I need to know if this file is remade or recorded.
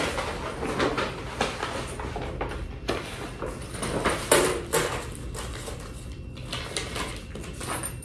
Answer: recorded